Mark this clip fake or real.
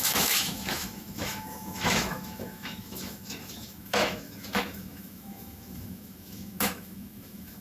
fake